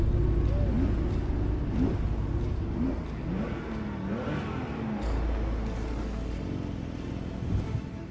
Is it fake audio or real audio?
real